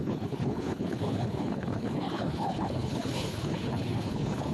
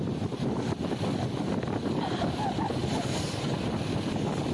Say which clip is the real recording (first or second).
second